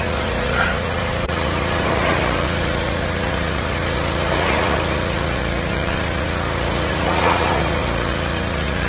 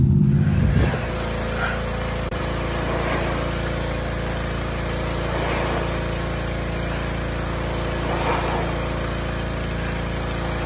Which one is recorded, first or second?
second